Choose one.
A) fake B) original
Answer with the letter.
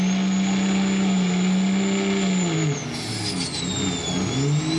B